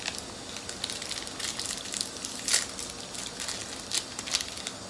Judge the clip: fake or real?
real